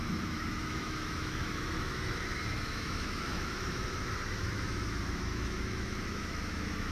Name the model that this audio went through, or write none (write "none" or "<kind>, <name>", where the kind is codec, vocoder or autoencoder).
autoencoder, DAC-VAE